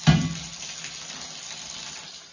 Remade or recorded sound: recorded